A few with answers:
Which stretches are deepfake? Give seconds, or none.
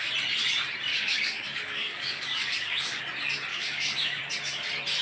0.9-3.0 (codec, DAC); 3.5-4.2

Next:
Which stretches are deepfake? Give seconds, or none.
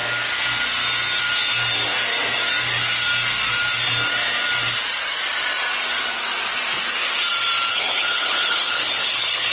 7.7-9.5 (codec, HILCodec)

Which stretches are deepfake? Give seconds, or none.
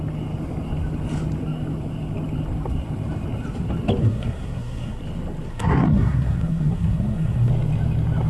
4.0-5.0 (codec, SNAC); 5.5-7.5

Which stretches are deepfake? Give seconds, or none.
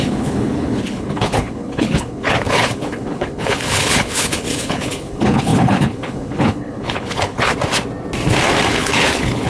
0.0-7.5 (codec, HILCodec); 8.7-9.5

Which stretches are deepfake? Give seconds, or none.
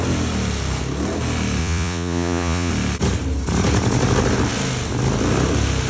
1.6-2.7 (vocoder, Vocos)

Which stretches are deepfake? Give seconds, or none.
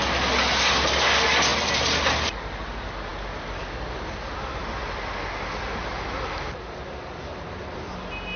none